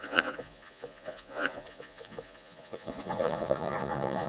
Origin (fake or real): fake